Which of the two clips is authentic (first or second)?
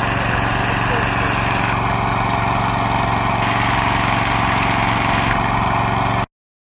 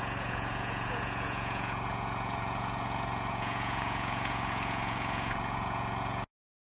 first